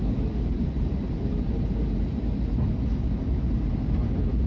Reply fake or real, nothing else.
real